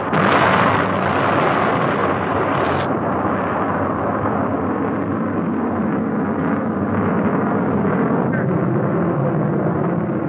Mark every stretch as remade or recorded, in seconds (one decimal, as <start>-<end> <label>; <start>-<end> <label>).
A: 0.0-2.0 recorded; 2.0-2.8 remade; 2.8-10.3 recorded